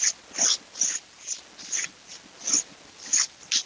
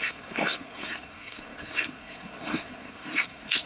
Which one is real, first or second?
first